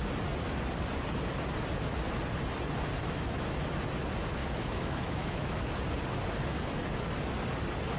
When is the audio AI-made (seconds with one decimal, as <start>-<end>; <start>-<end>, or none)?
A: 4.4-5.6